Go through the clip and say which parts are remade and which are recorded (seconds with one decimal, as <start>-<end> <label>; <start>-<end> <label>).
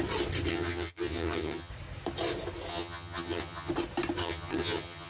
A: 0.0-0.5 recorded; 0.5-1.7 remade; 1.7-2.7 recorded; 2.7-3.7 remade; 3.7-4.2 recorded; 4.2-5.1 remade